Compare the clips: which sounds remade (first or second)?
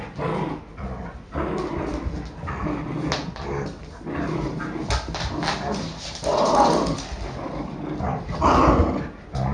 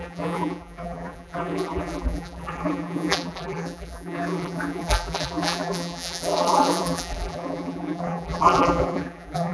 second